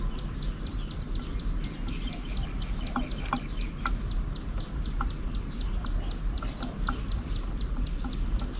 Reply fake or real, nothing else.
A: real